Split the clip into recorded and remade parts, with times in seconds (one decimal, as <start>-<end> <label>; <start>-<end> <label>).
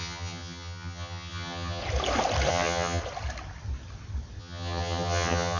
0.0-1.8 remade; 1.8-2.5 recorded; 2.5-3.0 remade; 3.0-4.4 recorded; 4.4-5.6 remade